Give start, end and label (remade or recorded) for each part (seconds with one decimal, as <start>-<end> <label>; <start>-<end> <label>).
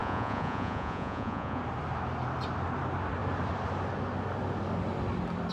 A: 0.0-1.6 remade; 1.6-5.5 recorded